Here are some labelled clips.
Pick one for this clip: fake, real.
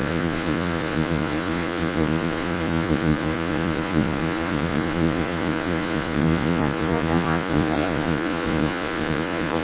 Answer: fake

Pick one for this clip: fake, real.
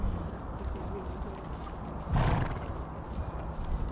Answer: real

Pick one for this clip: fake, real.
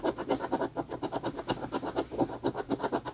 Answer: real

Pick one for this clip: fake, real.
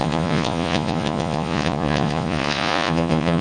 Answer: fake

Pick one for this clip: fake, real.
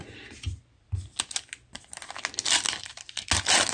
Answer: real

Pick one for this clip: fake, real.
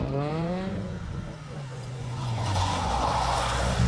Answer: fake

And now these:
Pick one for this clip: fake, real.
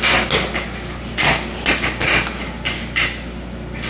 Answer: real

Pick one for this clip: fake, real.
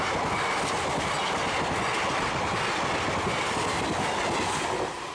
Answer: real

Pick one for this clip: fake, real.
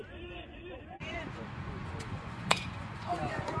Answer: fake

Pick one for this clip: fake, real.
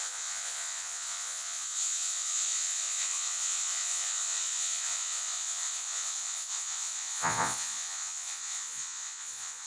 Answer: fake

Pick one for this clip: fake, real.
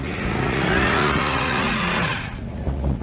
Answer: fake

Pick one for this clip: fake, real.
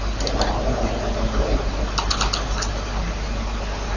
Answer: real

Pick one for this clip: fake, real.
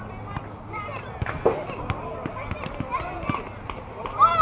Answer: real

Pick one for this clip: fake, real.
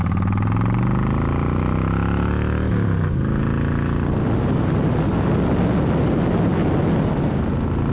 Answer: real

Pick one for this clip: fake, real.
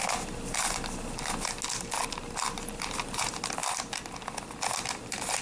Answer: real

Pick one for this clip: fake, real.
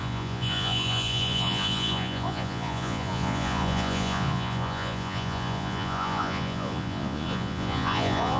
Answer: fake